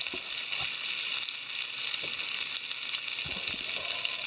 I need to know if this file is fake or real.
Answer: real